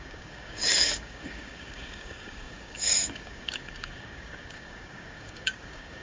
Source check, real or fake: fake